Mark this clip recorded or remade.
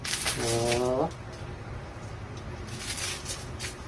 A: recorded